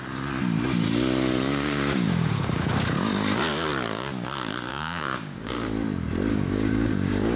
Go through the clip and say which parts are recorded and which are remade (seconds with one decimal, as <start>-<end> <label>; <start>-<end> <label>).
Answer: 0.0-1.5 recorded; 1.5-3.1 remade; 3.1-4.7 recorded; 4.7-5.5 remade; 5.5-6.3 recorded; 6.3-7.4 remade